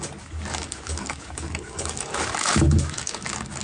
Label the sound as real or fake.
fake